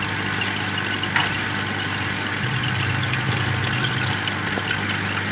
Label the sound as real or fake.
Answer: real